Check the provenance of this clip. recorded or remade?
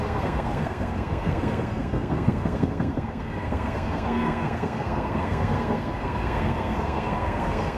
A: remade